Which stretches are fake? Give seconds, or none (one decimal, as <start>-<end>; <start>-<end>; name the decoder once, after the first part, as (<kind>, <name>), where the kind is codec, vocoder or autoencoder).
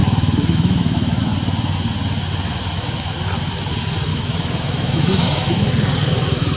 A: 0.0-1.2 (autoencoder, DAC-VAE); 4.1-5.7